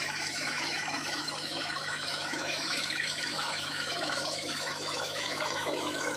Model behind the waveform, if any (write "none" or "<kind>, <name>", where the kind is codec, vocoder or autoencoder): autoencoder, DAC-VAE